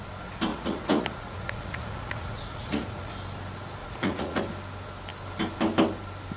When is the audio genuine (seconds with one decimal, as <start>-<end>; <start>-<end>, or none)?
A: 0.0-0.5; 3.1-3.8; 4.4-6.4